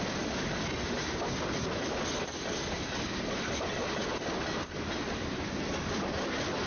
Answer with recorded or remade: recorded